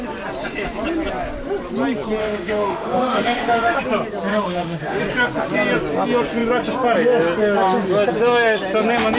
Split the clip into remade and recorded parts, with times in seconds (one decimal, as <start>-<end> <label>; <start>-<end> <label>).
0.0-2.2 recorded; 2.2-3.8 remade; 3.8-4.3 recorded; 4.3-5.0 remade; 5.0-9.2 recorded